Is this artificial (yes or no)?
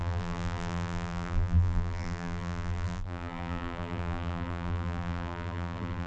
yes